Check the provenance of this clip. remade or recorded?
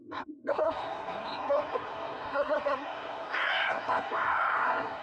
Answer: remade